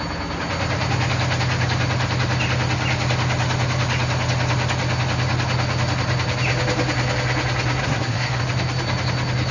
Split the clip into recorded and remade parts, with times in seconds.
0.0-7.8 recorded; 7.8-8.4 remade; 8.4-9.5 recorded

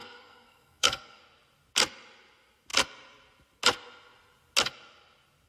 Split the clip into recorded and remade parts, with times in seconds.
0.0-1.2 remade; 1.2-5.5 recorded

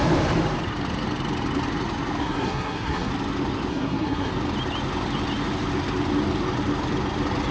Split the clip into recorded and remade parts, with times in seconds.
0.0-2.2 recorded; 2.2-3.1 remade; 3.1-3.7 recorded; 3.7-4.3 remade; 4.3-7.5 recorded